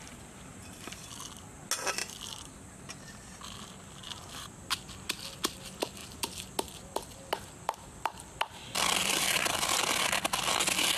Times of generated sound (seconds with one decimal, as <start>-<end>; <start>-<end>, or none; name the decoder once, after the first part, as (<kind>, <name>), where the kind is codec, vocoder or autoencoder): 0.5-1.6 (vocoder, BigVGAN v2); 2.0-4.5; 6.0-9.5